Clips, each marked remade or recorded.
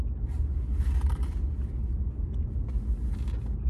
recorded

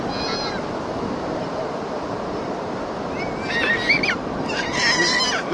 recorded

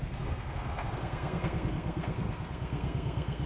remade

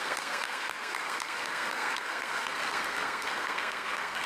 remade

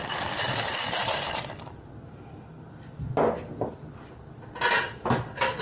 recorded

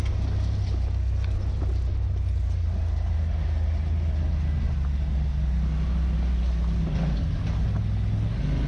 recorded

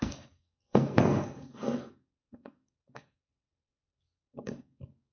remade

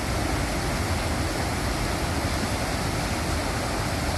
recorded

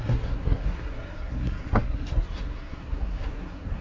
remade